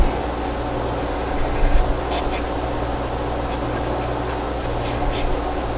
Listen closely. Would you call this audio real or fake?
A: real